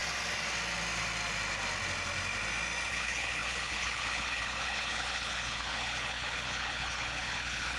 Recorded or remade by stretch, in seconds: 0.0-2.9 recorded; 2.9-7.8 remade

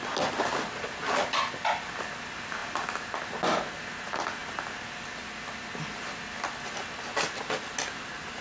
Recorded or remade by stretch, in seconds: 0.0-8.4 recorded